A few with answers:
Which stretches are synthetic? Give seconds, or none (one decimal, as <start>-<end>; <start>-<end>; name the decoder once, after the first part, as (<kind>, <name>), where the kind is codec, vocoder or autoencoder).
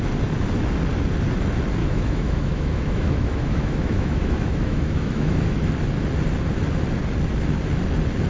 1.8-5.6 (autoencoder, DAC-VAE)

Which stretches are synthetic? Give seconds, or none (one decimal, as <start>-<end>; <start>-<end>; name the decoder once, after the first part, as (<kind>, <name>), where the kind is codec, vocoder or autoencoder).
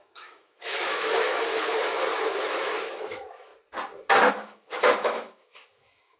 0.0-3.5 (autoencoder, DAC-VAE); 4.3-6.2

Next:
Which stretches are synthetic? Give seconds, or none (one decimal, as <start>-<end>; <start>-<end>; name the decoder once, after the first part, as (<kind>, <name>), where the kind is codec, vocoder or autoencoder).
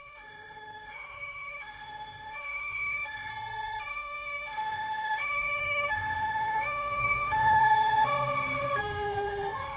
0.0-3.3 (autoencoder, DAC-VAE); 3.9-7.6; 8.8-9.8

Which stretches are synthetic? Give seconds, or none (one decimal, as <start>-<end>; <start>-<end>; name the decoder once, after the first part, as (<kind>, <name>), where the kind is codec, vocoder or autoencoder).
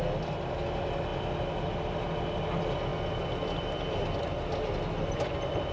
none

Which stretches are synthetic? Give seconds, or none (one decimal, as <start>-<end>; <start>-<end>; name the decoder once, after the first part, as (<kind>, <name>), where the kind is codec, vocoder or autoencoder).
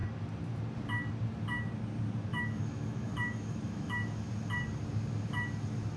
2.3-4.3 (autoencoder, DAC-VAE)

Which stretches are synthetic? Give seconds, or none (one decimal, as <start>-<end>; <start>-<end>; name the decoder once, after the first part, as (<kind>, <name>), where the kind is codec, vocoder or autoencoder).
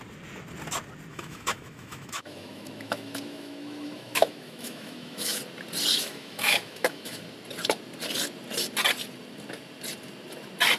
1.1-5.4 (autoencoder, DAC-VAE); 5.9-7.2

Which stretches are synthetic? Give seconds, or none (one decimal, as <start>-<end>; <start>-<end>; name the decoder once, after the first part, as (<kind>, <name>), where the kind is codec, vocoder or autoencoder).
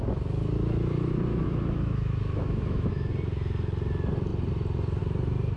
1.3-3.1 (autoencoder, DAC-VAE)